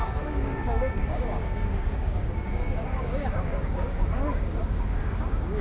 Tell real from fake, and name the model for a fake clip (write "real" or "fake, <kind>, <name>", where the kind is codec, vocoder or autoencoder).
fake, codec, DAC